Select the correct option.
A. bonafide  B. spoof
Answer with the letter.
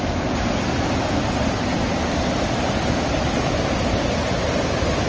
A